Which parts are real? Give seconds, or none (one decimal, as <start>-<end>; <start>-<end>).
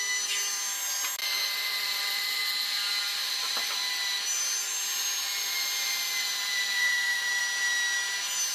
0.0-1.2; 2.4-3.2; 7.4-8.5